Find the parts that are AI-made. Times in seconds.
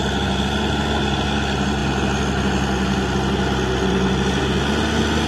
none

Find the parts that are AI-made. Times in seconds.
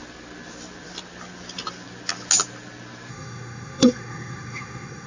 3.1-5.1